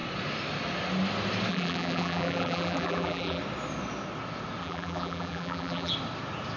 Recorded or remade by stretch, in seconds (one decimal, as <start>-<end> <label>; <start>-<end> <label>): 0.0-1.5 recorded; 1.5-3.4 remade; 3.4-4.6 recorded; 4.6-5.9 remade; 5.9-6.6 recorded